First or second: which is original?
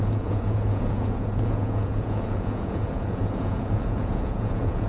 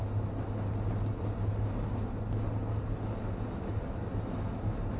second